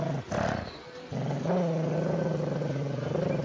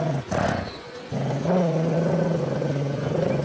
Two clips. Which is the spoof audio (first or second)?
second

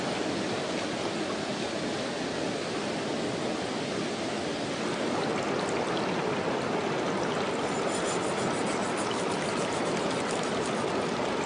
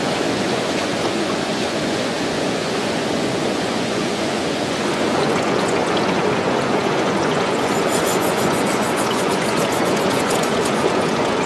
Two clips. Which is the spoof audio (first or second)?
second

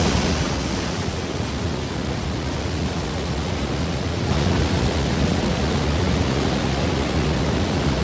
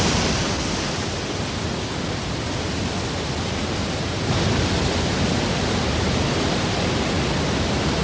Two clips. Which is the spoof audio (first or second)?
first